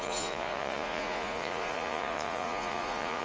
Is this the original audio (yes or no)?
no